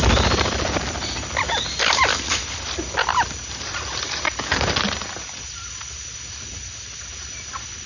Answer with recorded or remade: recorded